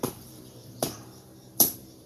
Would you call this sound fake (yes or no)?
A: yes